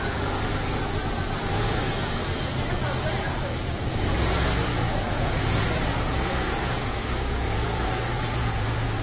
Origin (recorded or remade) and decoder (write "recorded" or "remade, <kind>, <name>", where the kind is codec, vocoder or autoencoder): remade, vocoder, Vocos